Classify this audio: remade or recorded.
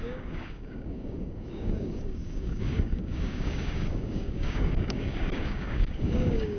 remade